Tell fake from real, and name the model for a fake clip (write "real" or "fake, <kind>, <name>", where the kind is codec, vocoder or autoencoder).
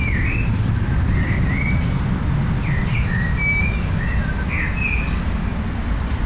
real